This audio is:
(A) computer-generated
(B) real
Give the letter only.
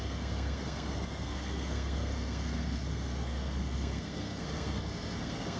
A